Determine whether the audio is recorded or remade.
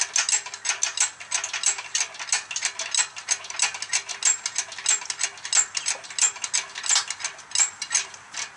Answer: recorded